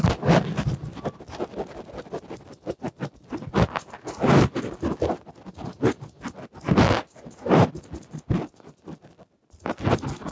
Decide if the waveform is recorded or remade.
recorded